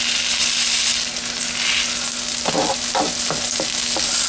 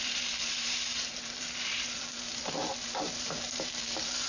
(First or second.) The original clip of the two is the first